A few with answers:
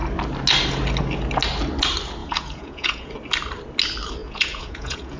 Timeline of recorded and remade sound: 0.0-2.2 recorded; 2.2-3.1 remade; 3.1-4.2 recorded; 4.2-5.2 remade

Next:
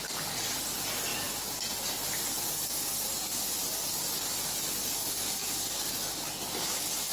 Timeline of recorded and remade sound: 0.0-7.1 recorded

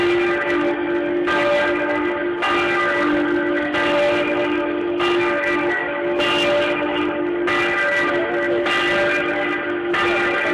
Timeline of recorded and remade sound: 0.0-10.5 recorded

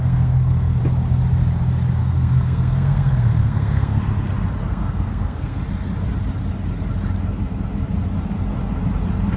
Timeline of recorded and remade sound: 0.0-0.8 remade; 0.8-2.0 recorded; 2.0-4.0 remade; 4.0-4.6 recorded; 4.6-5.6 remade; 5.6-9.4 recorded

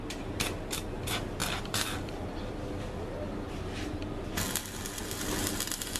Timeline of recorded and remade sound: 0.0-6.0 recorded

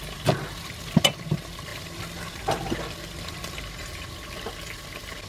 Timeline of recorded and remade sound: 0.0-1.7 recorded; 1.7-4.5 remade; 4.5-5.3 recorded

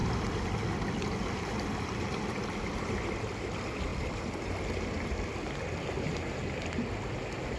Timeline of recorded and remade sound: 0.0-7.6 recorded

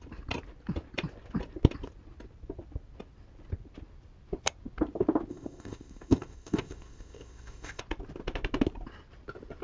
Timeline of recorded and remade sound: 0.0-5.3 recorded; 5.3-7.8 remade; 7.8-9.6 recorded